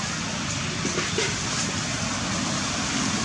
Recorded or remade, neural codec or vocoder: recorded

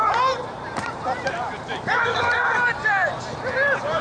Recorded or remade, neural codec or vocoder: remade, vocoder, BigVGAN v2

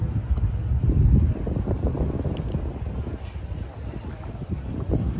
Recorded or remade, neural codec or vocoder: recorded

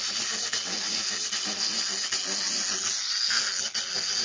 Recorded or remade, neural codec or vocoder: recorded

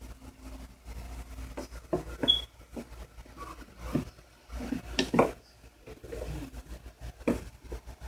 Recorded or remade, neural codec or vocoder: recorded